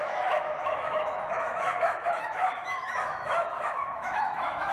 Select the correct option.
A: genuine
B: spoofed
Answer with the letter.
B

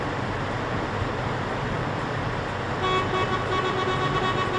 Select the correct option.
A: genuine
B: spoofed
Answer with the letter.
A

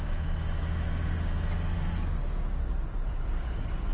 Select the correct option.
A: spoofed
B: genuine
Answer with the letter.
B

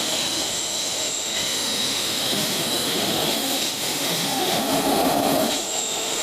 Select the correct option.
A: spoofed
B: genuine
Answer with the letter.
A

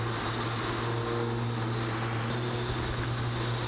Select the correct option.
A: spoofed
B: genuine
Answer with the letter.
B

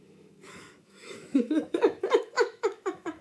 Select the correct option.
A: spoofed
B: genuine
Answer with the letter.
A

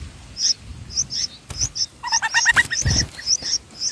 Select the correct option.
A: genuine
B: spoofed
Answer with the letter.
A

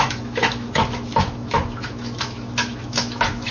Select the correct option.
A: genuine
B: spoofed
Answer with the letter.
B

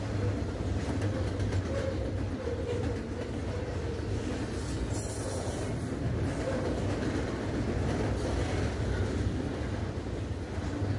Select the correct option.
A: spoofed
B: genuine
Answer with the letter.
B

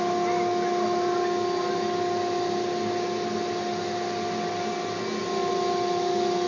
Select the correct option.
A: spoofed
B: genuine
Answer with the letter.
B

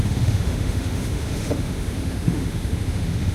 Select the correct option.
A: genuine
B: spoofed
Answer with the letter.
B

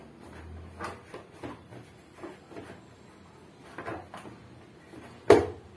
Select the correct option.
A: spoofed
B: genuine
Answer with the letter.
B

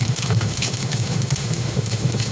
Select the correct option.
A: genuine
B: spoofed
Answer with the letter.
B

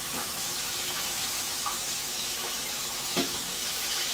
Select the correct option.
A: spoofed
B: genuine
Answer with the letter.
A